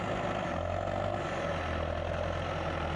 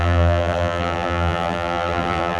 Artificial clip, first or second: second